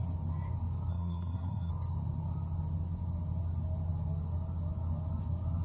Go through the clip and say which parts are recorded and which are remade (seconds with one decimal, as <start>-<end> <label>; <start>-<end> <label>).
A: 0.0-0.9 recorded; 0.9-1.7 remade; 1.7-5.6 recorded